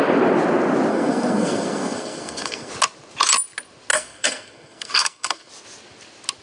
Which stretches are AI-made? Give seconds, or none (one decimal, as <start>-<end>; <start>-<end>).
0.9-2.7; 3.9-5.5